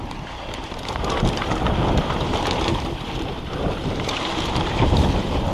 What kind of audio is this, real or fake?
fake